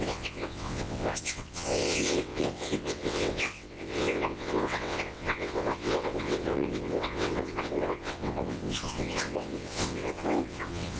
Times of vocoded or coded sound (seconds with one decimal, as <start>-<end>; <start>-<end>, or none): 0.0-11.0